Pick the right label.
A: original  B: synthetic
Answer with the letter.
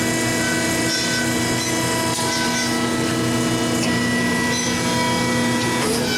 A